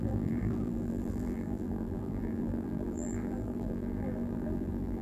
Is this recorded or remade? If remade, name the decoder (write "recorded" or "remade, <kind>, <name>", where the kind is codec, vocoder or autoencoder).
remade, vocoder, BigVGAN v2